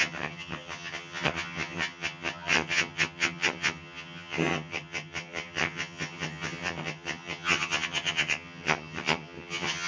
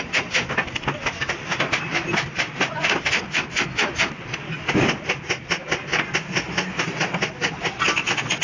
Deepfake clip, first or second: first